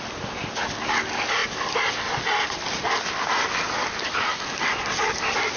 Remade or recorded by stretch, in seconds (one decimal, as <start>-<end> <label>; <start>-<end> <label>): 0.0-5.6 recorded